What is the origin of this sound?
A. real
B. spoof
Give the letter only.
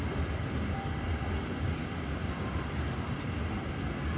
A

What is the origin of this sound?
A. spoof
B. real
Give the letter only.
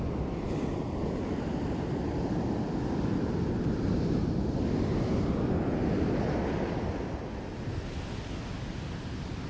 B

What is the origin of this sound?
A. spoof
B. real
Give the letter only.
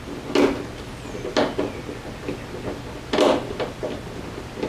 B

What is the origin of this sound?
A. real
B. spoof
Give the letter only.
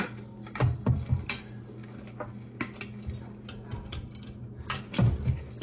A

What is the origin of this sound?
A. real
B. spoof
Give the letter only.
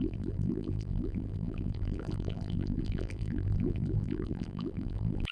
B